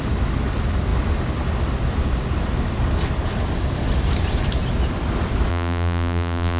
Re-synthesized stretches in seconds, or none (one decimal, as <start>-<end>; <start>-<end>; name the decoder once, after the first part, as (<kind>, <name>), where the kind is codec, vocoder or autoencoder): 5.5-6.6 (vocoder, BigVGAN v2)